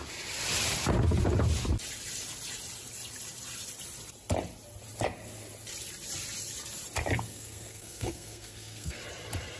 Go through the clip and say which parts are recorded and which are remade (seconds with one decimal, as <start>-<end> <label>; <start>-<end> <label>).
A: 0.0-7.3 recorded; 7.3-9.0 remade; 9.0-9.6 recorded